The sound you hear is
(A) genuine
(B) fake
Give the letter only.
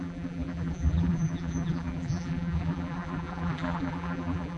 B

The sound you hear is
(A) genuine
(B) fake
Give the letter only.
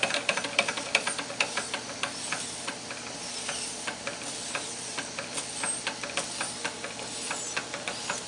A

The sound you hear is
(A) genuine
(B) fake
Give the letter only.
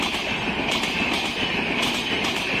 B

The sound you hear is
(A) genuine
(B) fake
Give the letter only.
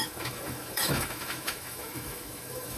B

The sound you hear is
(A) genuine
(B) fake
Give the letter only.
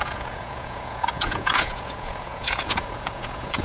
B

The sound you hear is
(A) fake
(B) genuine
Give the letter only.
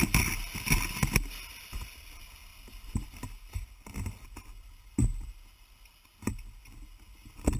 B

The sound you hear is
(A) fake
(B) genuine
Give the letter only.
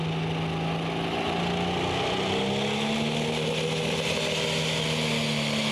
B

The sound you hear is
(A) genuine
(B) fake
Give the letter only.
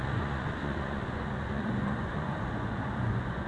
B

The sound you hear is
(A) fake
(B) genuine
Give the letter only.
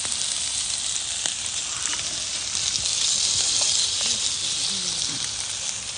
B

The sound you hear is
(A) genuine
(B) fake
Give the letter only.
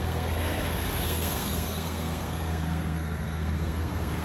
B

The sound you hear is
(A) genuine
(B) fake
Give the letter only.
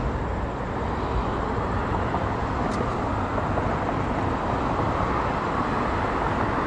A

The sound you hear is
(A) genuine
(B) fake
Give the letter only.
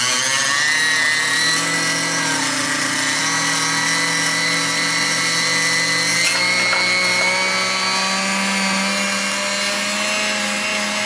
A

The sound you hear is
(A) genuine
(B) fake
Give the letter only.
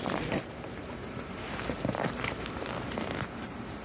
B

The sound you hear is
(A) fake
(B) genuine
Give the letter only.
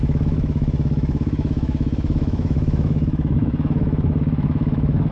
A